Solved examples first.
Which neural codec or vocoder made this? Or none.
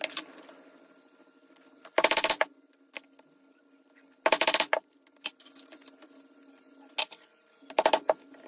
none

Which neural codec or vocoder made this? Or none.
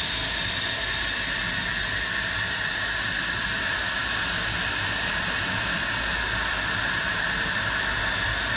none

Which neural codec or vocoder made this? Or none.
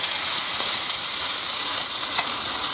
vocoder, Vocos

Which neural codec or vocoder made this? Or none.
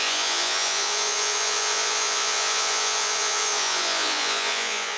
vocoder, Vocos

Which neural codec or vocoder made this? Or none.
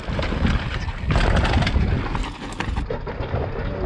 none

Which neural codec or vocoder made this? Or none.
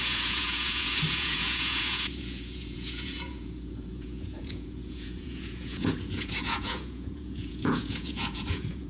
vocoder, Vocos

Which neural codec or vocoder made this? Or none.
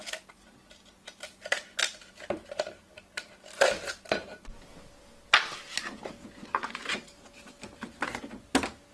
none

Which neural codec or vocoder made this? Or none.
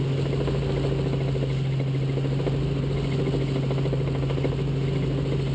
none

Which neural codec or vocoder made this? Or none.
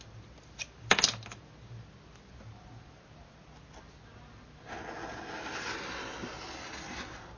none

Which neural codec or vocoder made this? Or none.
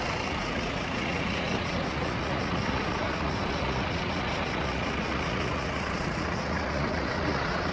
vocoder, Vocos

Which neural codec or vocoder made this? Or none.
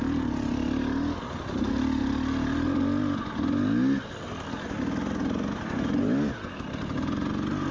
none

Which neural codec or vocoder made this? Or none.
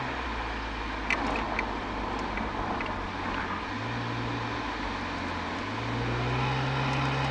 none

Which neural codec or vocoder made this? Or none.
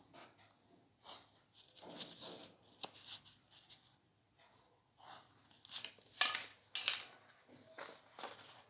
none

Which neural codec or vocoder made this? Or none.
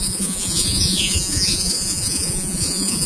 vocoder, Vocos